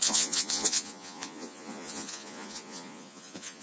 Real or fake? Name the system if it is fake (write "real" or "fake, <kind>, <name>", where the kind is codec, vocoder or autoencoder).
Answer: fake, vocoder, Vocos